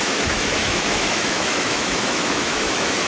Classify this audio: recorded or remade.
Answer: remade